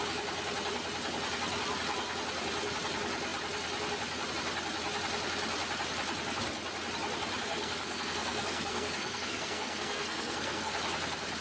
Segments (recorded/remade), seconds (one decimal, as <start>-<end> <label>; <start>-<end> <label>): 0.0-7.5 recorded; 7.5-10.7 remade; 10.7-11.4 recorded